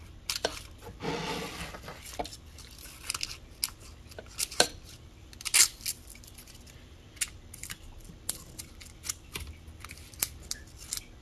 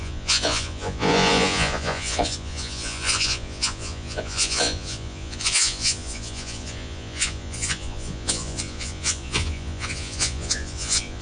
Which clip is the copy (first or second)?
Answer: second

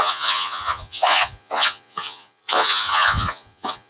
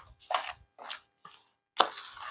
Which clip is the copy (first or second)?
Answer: first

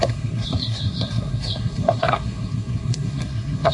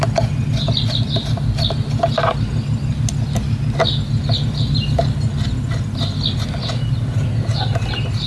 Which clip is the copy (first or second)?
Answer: first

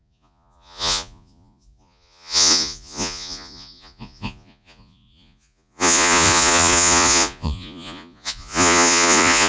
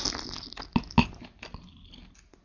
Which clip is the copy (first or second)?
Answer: first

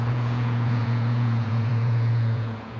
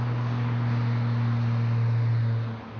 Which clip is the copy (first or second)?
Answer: first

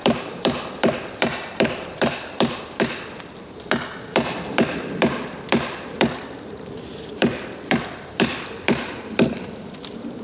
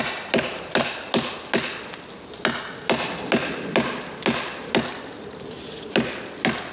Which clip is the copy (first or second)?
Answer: first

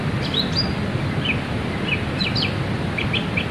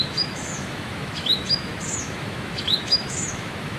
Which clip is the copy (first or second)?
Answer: second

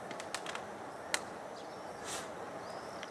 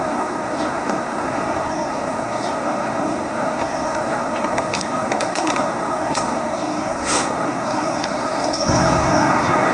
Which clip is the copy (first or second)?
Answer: second